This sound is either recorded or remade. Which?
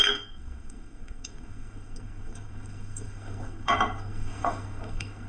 remade